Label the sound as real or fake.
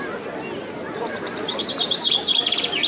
real